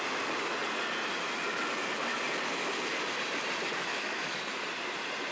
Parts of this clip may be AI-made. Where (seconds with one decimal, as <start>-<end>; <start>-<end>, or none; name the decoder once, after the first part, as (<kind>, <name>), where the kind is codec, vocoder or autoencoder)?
3.9-4.4 (autoencoder, DAC-VAE)